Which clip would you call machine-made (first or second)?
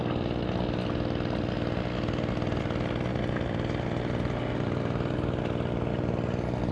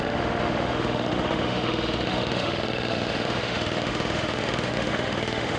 second